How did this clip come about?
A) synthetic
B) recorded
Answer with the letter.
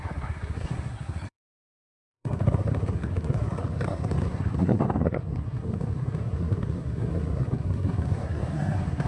A